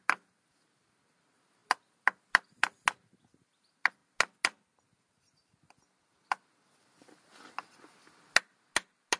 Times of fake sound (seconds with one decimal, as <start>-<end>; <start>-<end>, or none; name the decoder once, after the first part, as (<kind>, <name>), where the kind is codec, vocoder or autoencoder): none